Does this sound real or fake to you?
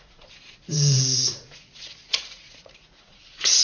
fake